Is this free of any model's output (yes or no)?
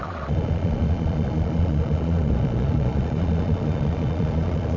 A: no